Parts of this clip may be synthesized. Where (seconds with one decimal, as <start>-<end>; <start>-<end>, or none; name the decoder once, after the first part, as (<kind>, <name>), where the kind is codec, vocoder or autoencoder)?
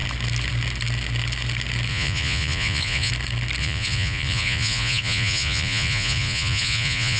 1.9-3.1 (vocoder, Vocos); 3.6-7.2